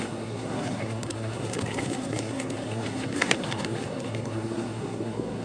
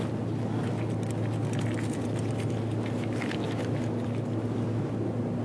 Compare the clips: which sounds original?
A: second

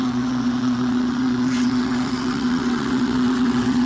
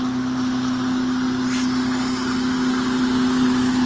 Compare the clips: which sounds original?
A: second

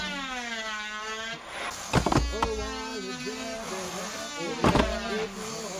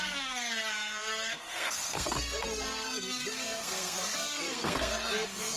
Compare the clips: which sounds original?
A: first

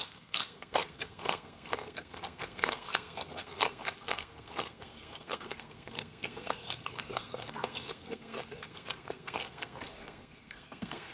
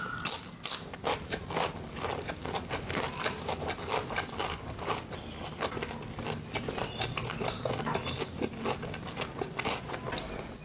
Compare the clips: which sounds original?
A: second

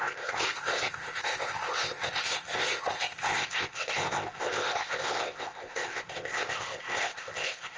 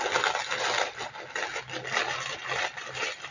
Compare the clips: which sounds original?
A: second